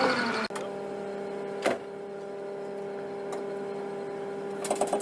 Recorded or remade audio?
recorded